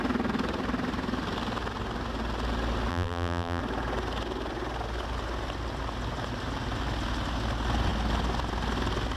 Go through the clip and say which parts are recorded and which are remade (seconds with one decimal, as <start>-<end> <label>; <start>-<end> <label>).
0.0-2.9 recorded; 2.9-3.6 remade; 3.6-9.2 recorded